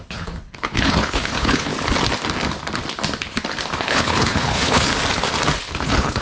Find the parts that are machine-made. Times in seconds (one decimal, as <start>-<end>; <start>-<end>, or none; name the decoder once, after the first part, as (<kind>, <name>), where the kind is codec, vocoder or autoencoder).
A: 0.0-1.7 (codec, HILCodec); 3.8-4.9; 5.6-6.2